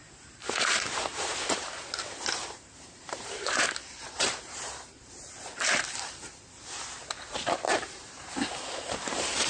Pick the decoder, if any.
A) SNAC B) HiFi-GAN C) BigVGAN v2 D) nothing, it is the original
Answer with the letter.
C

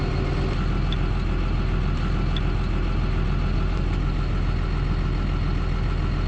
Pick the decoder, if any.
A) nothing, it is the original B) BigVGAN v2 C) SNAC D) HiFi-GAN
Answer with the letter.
A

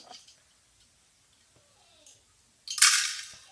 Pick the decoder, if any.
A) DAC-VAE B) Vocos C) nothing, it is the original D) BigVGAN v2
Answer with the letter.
C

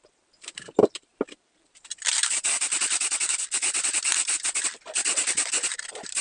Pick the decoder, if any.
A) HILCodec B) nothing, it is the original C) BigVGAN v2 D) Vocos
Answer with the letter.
C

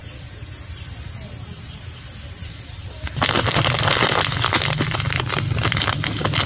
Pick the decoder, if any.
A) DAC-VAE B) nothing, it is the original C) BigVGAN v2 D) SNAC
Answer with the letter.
C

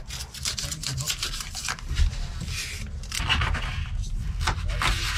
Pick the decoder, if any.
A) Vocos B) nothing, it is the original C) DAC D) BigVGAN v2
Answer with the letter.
B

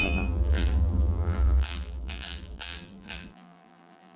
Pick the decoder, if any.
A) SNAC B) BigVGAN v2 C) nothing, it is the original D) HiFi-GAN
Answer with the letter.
B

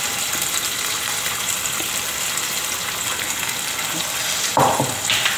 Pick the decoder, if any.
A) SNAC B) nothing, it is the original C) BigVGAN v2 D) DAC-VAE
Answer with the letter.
C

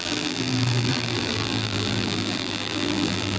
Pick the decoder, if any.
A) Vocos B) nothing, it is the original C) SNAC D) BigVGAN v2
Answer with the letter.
D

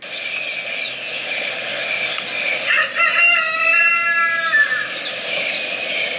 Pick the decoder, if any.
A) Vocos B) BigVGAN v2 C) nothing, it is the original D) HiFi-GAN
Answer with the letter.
C